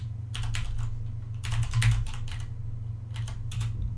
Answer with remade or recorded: recorded